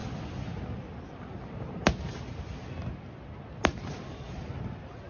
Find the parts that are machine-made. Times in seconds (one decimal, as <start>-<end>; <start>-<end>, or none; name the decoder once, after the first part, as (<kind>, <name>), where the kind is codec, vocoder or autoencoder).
3.7-4.5 (vocoder, BigVGAN v2)